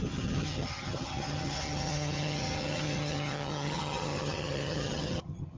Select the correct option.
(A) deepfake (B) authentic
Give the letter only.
A